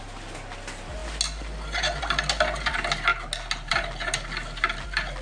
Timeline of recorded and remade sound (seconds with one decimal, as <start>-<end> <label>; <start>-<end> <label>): 0.0-5.2 recorded